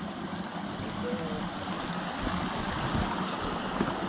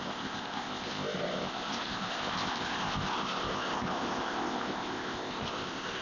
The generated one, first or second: second